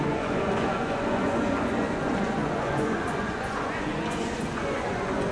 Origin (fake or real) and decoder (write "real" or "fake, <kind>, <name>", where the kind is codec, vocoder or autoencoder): fake, vocoder, Vocos